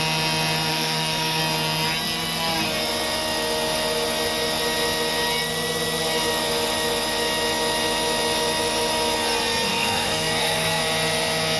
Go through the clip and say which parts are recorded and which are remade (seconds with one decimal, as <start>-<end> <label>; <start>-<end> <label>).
0.0-0.7 recorded; 0.7-1.4 remade; 1.4-9.7 recorded; 9.7-10.8 remade; 10.8-11.6 recorded